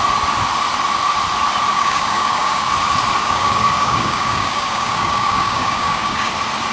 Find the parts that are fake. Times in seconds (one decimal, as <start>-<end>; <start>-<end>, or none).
1.7-2.7; 3.2-6.3